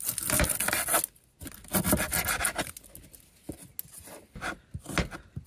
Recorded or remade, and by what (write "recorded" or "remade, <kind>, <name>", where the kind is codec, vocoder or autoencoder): recorded